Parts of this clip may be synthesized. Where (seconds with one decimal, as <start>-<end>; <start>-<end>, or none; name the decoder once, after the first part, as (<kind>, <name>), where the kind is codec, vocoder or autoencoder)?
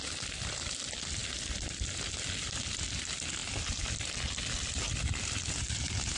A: none